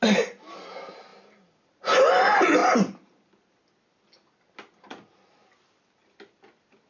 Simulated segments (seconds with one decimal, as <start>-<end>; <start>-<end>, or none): none